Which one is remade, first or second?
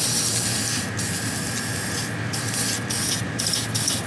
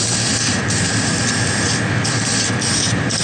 second